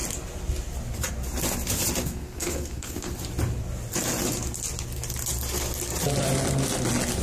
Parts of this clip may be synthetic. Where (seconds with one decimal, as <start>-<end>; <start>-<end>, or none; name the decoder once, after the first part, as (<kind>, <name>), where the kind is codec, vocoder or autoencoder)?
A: 2.0-3.1 (codec, SNAC)